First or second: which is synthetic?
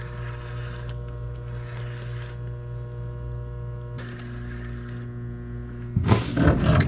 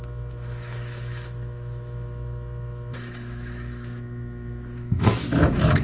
second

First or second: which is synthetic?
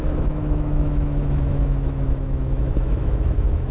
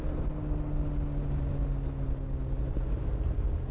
first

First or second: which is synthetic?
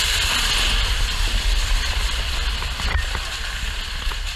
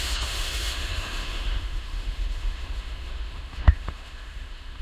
second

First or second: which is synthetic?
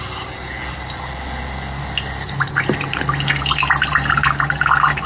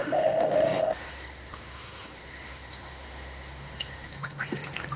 second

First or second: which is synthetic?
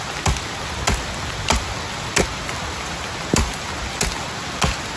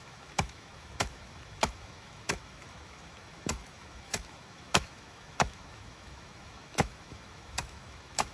second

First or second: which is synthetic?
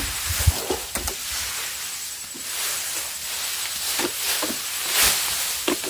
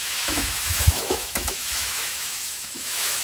second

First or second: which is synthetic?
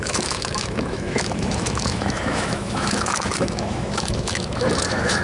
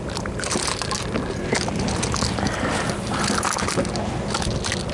first